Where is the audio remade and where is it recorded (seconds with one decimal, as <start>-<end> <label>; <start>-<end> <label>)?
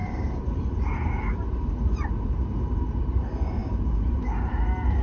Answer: 0.0-3.0 remade; 3.0-3.6 recorded; 3.6-4.2 remade; 4.2-5.0 recorded